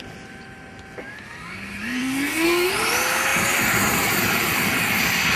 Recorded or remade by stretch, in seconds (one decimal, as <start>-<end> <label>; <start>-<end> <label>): 0.0-2.0 recorded; 2.0-2.7 remade; 2.7-5.4 recorded